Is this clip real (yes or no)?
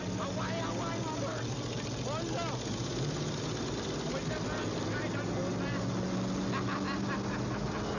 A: yes